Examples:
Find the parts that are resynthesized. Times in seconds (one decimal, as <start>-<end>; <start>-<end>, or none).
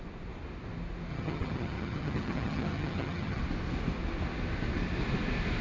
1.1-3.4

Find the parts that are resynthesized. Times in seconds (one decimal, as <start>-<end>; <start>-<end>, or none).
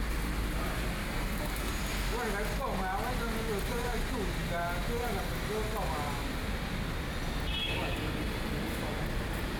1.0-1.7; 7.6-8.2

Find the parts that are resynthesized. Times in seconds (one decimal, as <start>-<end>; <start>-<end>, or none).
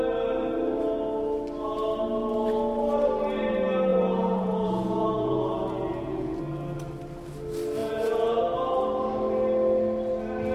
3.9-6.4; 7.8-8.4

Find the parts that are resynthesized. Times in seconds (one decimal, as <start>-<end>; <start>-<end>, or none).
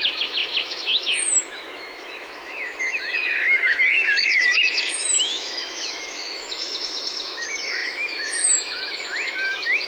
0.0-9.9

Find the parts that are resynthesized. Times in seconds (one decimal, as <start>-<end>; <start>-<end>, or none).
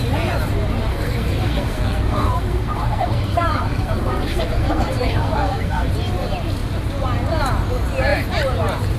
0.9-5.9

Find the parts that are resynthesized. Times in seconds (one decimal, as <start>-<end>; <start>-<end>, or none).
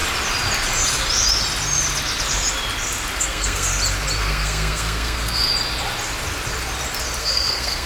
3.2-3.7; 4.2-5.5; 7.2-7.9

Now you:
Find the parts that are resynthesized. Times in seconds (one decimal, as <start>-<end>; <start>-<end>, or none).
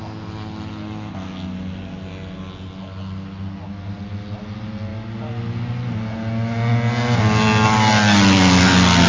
none